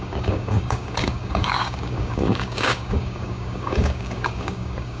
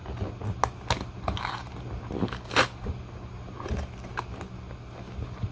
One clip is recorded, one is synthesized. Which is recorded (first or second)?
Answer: second